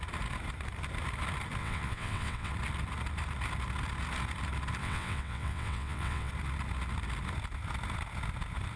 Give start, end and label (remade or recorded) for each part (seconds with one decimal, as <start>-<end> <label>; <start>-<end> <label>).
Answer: 0.0-1.6 recorded; 1.6-2.5 remade; 2.5-4.8 recorded; 4.8-6.3 remade; 6.3-8.8 recorded